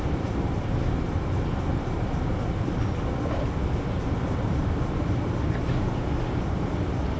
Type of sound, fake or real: real